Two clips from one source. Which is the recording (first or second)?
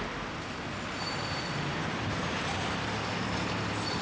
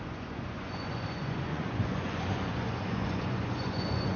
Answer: first